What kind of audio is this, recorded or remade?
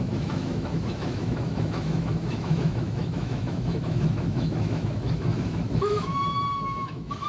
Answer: remade